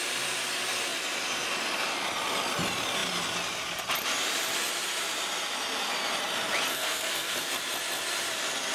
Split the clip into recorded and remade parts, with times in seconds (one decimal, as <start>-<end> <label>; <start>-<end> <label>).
0.0-6.7 recorded; 6.7-7.5 remade; 7.5-8.7 recorded